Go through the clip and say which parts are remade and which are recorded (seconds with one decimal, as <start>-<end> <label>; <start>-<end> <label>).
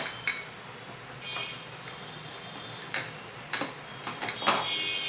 0.0-5.1 recorded